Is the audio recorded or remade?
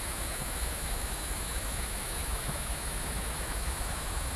remade